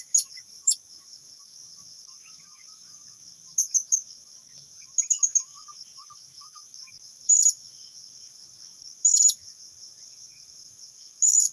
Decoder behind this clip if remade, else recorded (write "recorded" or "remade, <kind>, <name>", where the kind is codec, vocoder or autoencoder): remade, codec, DAC